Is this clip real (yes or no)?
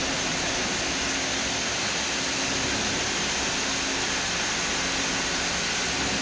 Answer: yes